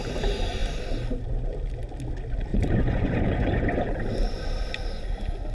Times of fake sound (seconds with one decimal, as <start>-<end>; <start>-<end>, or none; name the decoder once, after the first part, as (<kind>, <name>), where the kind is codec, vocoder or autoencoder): 2.5-3.9 (vocoder, Vocos)